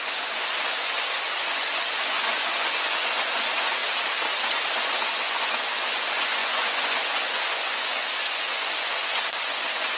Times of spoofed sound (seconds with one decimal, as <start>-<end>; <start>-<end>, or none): 0.0-3.8; 4.8-10.0